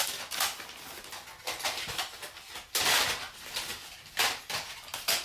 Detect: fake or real real